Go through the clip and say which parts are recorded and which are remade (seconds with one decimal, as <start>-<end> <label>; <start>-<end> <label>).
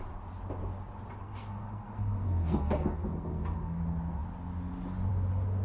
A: 0.0-1.2 recorded; 1.2-3.8 remade; 3.8-5.6 recorded